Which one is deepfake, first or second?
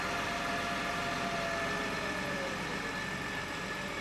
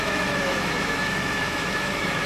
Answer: second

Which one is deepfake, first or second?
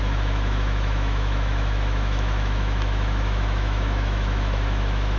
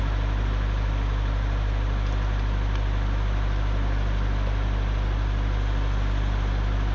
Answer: first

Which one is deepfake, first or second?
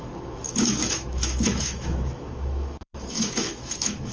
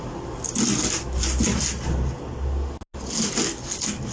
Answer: first